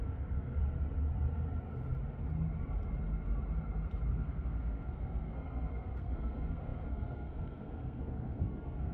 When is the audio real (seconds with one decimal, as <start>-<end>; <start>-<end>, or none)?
0.6-4.1